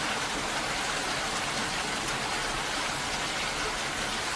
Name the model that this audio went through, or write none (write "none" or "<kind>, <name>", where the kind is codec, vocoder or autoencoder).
none